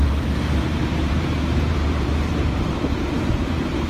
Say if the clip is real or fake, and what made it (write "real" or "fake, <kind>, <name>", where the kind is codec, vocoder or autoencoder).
fake, vocoder, BigVGAN v2